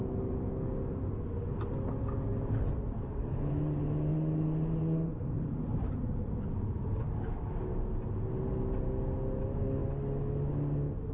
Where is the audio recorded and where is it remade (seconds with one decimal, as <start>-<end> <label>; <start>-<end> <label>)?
0.0-2.3 recorded; 2.3-3.5 remade; 3.5-4.1 recorded; 4.1-7.4 remade; 7.4-11.1 recorded